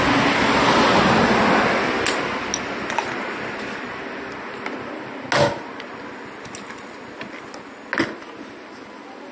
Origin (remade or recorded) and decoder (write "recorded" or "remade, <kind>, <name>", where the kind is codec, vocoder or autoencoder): recorded